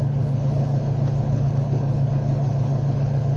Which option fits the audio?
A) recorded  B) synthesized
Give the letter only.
B